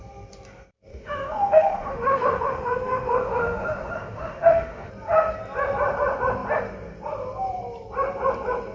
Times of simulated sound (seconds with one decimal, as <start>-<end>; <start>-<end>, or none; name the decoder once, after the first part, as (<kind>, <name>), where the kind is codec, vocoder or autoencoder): 0.9-4.9 (autoencoder, DAC-VAE)